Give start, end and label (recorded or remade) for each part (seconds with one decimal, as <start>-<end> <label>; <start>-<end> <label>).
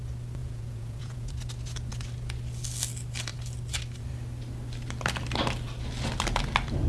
0.0-0.4 recorded; 0.4-1.3 remade; 1.3-6.9 recorded